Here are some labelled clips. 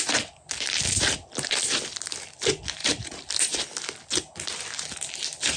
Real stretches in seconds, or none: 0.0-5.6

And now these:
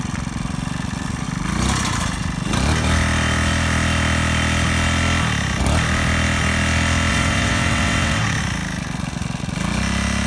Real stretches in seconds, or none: 0.0-7.1; 8.4-10.3

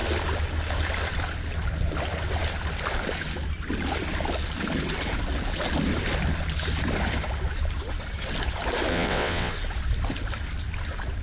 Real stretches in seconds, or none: 0.0-8.9; 9.5-11.2